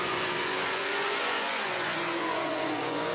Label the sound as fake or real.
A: fake